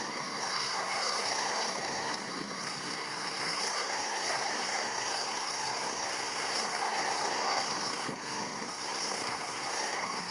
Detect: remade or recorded remade